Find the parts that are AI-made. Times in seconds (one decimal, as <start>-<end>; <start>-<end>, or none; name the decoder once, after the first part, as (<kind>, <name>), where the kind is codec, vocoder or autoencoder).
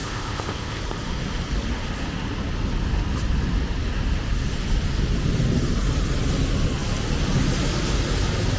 0.0-0.8 (codec, ZipCodec)